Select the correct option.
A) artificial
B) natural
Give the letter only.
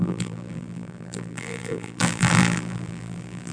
A